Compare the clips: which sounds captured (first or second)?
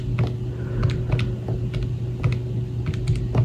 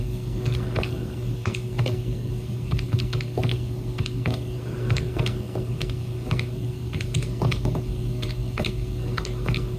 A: first